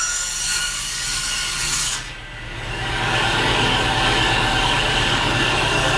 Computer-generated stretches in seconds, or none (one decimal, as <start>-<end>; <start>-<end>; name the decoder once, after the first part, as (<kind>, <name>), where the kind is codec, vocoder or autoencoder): 0.0-6.0 (codec, DAC)